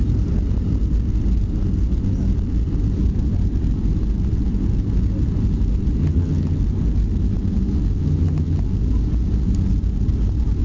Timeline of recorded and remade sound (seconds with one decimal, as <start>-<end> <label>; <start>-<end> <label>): 0.0-6.0 recorded; 6.0-6.6 remade; 6.6-8.0 recorded; 8.0-8.6 remade; 8.6-10.6 recorded